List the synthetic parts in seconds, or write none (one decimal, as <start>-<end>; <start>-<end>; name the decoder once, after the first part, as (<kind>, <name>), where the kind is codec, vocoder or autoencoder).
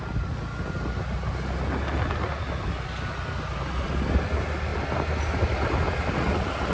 none